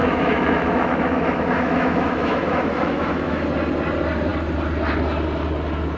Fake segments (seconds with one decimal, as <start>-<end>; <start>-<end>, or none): 0.0-3.4